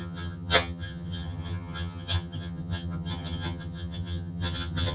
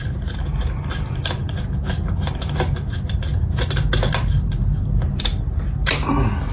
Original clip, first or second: second